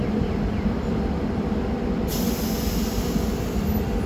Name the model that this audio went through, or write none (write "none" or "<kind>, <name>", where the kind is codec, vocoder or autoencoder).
none